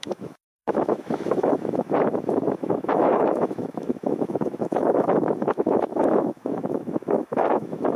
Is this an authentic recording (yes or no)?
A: no